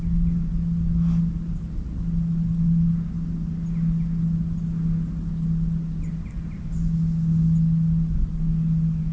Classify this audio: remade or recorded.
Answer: recorded